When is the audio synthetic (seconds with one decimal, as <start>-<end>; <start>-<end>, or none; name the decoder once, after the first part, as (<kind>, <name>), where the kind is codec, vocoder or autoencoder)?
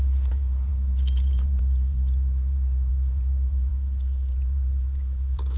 0.0-5.6 (vocoder, BigVGAN v2)